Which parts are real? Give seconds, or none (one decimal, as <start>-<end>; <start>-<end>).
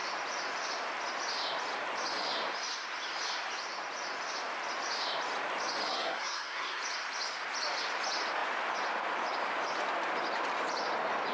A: 0.0-5.9; 6.8-11.3